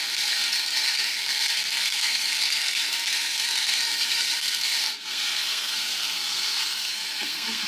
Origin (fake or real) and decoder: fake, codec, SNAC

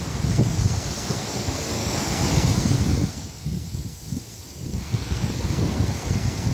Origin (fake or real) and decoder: fake, codec, SNAC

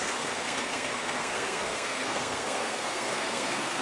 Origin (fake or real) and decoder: fake, codec, SNAC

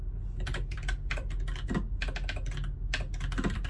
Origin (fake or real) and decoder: real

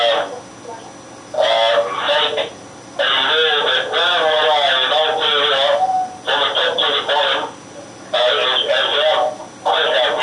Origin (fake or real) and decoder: real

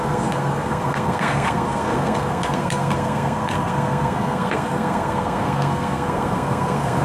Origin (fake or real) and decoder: fake, codec, SNAC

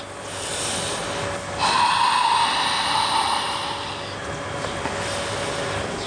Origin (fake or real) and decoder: real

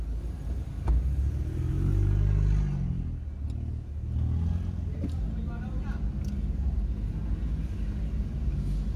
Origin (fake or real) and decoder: real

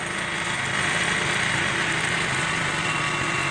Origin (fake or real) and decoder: real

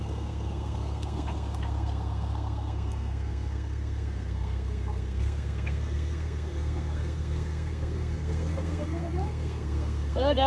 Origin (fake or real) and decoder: fake, codec, SNAC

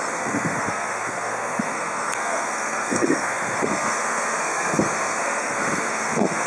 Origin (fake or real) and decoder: fake, codec, SNAC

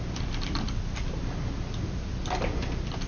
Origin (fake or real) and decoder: real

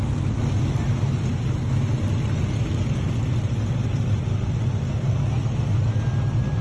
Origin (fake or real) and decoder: real